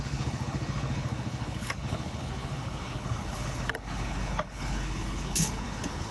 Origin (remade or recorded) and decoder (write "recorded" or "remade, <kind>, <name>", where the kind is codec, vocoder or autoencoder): remade, codec, HILCodec